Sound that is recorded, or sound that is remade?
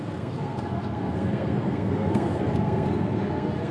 remade